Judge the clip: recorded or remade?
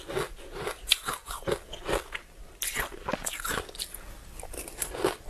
recorded